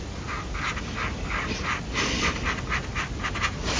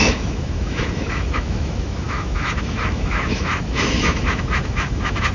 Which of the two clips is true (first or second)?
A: first